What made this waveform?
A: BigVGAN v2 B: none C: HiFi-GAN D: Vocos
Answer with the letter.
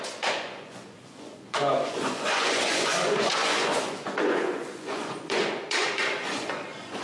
D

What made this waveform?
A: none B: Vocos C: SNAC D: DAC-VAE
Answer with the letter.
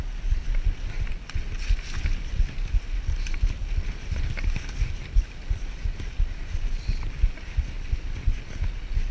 A